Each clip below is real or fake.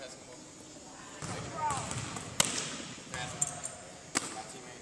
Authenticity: real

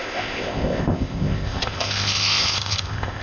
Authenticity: fake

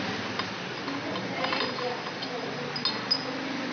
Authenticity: real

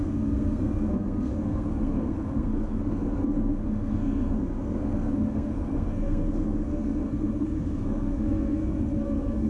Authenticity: fake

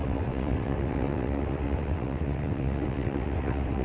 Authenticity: fake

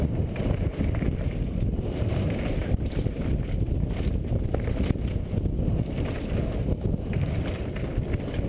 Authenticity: real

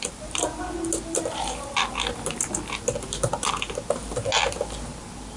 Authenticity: real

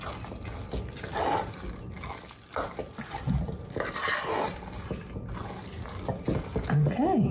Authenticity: real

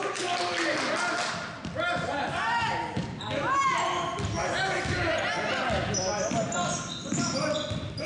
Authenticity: real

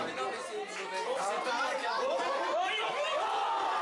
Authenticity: real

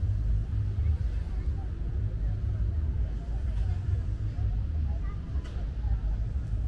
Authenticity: real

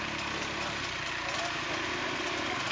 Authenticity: fake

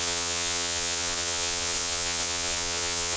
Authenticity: fake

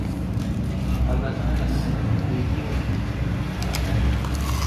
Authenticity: real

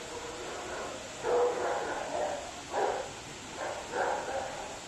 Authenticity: real